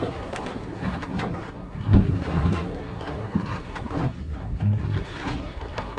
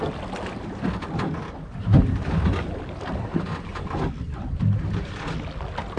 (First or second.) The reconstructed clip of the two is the first